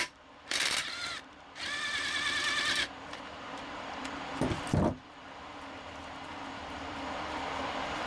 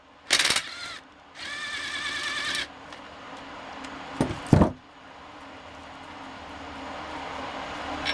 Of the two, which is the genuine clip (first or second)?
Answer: second